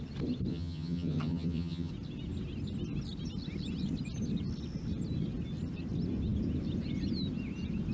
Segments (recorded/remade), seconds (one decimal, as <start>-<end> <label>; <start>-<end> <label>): 0.0-0.5 recorded; 0.5-1.9 remade; 1.9-7.9 recorded

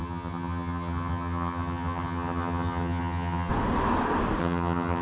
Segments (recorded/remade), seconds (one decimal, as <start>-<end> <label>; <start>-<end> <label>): 0.0-3.5 remade; 3.5-4.4 recorded; 4.4-5.0 remade

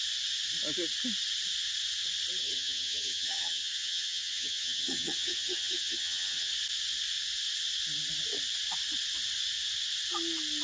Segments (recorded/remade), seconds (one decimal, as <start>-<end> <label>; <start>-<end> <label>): 0.0-2.4 recorded; 2.4-6.5 remade; 6.5-10.6 recorded

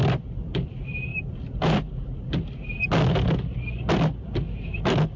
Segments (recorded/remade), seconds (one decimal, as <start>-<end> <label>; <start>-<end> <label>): 0.0-5.2 recorded

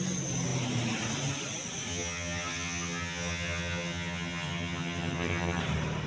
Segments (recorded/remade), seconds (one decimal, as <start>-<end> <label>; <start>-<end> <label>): 0.0-1.9 recorded; 1.9-5.6 remade; 5.6-6.1 recorded

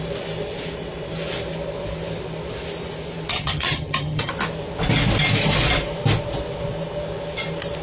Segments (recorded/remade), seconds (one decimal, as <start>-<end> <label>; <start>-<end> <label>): 0.0-3.3 recorded; 3.3-4.3 remade; 4.3-7.8 recorded